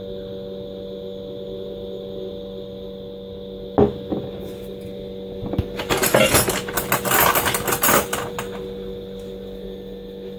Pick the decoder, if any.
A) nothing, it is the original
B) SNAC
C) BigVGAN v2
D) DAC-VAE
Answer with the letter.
A